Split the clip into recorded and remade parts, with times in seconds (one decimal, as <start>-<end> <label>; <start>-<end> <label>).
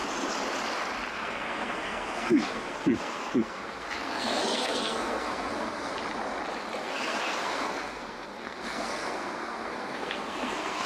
0.0-1.1 recorded; 1.1-5.9 remade; 5.9-6.8 recorded; 6.8-10.9 remade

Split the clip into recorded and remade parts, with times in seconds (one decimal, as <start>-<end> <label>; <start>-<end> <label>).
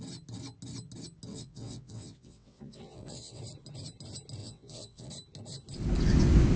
0.0-1.3 recorded; 1.3-3.4 remade; 3.4-4.4 recorded; 4.4-5.1 remade; 5.1-6.6 recorded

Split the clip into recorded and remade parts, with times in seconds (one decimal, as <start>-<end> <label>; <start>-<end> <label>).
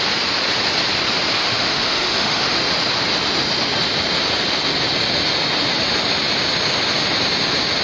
0.0-1.4 recorded; 1.4-2.6 remade; 2.6-7.8 recorded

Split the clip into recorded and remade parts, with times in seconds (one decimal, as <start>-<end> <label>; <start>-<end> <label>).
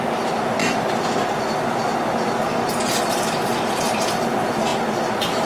0.0-5.5 recorded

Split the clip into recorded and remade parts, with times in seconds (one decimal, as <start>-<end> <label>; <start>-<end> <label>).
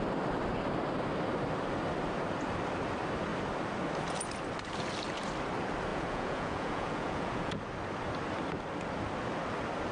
0.0-5.9 recorded; 5.9-7.6 remade; 7.6-9.9 recorded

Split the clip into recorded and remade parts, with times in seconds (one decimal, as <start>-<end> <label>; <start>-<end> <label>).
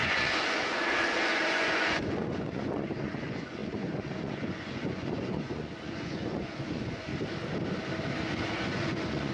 0.0-7.1 remade; 7.1-8.2 recorded; 8.2-9.3 remade